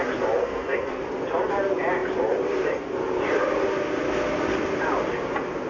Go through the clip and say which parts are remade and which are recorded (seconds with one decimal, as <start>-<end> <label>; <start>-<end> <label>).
0.0-0.4 recorded; 0.4-1.0 remade; 1.0-5.7 recorded

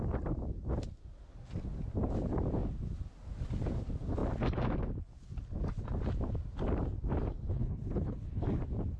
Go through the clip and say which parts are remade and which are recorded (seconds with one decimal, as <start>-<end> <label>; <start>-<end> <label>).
0.0-7.5 recorded; 7.5-8.6 remade; 8.6-9.0 recorded

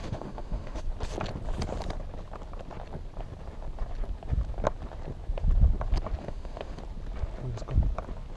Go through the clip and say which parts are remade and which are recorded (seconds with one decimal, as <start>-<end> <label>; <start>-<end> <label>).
0.0-0.8 remade; 0.8-6.2 recorded; 6.2-6.8 remade; 6.8-8.4 recorded

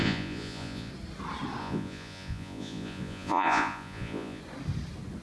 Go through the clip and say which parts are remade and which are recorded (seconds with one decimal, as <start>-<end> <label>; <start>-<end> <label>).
0.0-0.9 remade; 0.9-1.6 recorded; 1.6-4.4 remade; 4.4-5.2 recorded

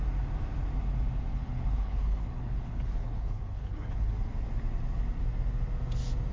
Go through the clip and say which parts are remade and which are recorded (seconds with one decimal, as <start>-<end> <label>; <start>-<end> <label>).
0.0-1.3 recorded; 1.3-4.1 remade; 4.1-6.3 recorded

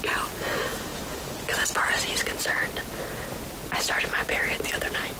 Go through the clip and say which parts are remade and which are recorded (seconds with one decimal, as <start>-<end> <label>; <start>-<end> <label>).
0.0-5.2 recorded